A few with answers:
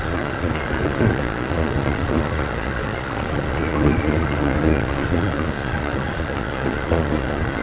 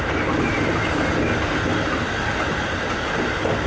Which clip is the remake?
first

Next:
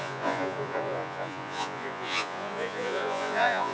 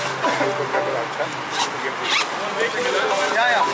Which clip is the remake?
first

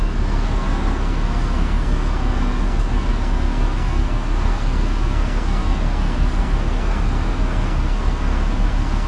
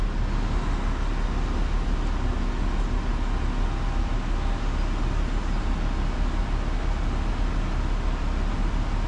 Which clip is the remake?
first